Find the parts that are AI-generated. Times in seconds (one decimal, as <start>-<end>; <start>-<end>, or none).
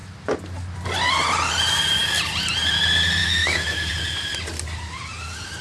3.2-3.9